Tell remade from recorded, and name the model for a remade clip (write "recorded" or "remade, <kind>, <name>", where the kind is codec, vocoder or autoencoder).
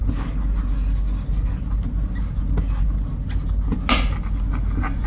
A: recorded